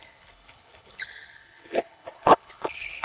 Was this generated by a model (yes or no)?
yes